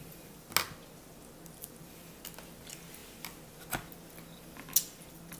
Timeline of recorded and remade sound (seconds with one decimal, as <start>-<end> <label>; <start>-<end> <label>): 0.0-5.4 recorded